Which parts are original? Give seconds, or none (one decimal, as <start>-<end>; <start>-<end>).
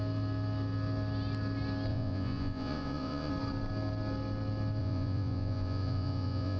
0.0-1.9; 3.3-4.8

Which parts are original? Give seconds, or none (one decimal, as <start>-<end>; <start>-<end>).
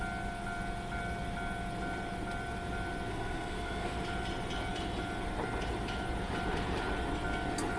0.0-3.1; 3.9-7.8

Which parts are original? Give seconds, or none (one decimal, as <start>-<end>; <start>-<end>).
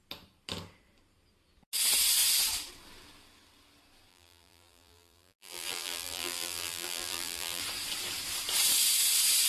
0.0-4.1; 7.6-9.5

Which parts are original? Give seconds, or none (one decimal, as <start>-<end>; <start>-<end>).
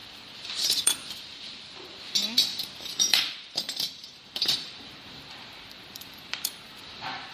2.0-2.5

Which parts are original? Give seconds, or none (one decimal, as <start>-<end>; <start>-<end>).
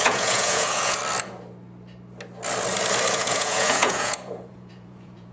1.0-3.1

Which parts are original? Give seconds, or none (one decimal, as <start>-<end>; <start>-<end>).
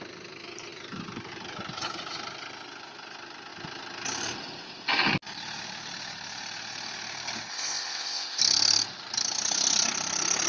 0.0-7.5; 8.4-10.5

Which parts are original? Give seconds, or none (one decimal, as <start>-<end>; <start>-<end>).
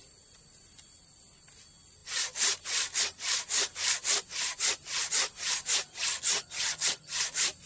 0.0-5.9; 7.2-7.7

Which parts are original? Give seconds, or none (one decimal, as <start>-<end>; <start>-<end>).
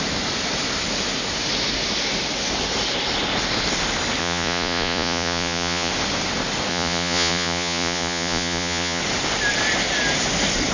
0.0-4.2; 5.9-6.7; 9.0-10.7